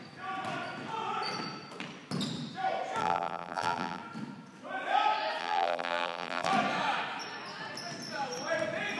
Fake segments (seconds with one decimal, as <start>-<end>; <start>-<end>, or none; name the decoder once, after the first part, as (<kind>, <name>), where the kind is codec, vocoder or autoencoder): 3.0-4.0 (vocoder, BigVGAN v2); 5.4-6.5